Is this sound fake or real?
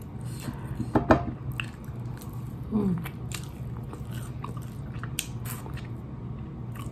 real